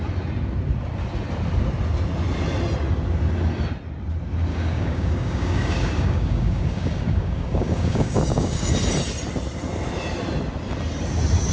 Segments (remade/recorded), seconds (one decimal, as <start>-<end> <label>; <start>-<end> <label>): 0.0-4.5 recorded; 4.5-8.7 remade; 8.7-11.5 recorded